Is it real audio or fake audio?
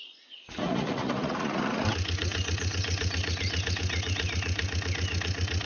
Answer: fake